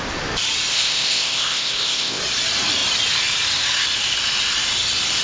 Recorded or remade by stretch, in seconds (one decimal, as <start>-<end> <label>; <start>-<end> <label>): 0.0-0.7 recorded; 0.7-2.2 remade; 2.2-5.2 recorded